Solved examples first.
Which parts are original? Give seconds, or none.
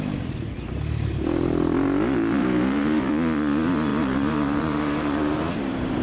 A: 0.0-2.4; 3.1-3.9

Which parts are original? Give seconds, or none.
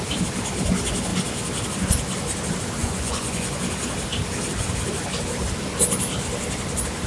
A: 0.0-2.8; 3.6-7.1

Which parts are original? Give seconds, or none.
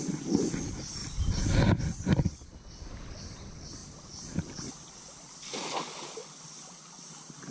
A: 0.0-7.5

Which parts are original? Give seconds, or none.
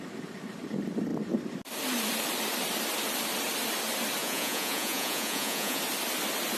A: 0.0-4.2; 5.8-6.6